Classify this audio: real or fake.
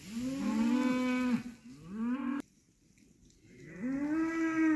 real